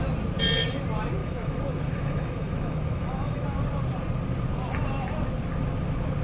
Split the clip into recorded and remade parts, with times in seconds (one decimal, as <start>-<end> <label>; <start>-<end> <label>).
0.0-1.2 recorded; 1.2-3.6 remade; 3.6-6.2 recorded